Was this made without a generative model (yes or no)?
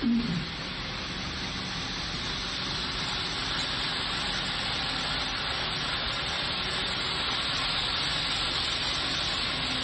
yes